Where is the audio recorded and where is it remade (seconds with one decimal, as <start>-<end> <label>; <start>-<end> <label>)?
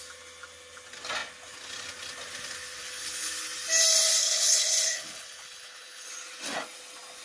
0.0-2.8 recorded; 2.8-3.3 remade; 3.3-4.2 recorded; 4.2-6.1 remade; 6.1-7.2 recorded